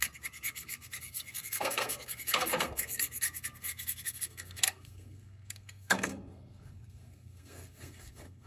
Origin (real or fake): fake